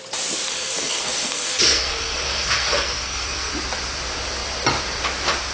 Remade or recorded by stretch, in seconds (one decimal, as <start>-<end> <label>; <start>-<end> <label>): 0.0-0.5 recorded; 0.5-3.5 remade; 3.5-5.5 recorded